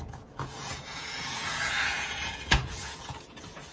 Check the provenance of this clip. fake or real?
fake